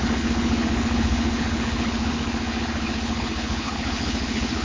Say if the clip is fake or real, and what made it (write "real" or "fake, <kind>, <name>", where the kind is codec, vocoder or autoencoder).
fake, codec, HILCodec